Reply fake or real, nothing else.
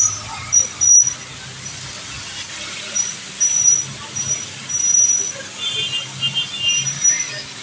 real